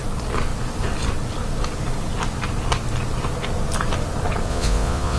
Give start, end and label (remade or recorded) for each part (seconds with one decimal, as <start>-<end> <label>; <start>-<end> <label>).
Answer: 0.0-4.5 recorded; 4.5-5.2 remade